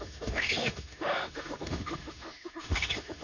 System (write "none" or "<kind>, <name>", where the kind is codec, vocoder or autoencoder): autoencoder, DAC-VAE